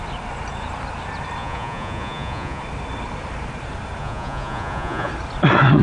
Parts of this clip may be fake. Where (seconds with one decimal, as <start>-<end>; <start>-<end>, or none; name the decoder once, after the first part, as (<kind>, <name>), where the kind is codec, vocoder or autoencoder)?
1.4-2.6 (vocoder, Vocos); 4.0-5.1